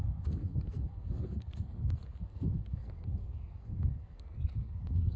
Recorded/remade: remade